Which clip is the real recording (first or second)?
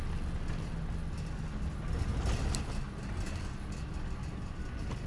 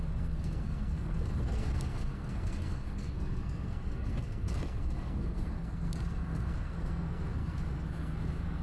first